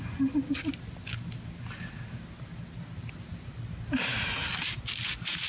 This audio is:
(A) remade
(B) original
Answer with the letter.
B